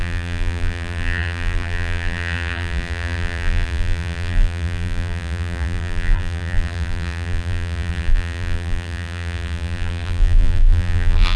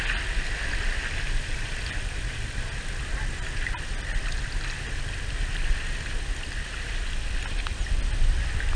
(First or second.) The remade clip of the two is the first